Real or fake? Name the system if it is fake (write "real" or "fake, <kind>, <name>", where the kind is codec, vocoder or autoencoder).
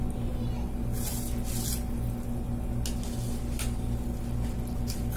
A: real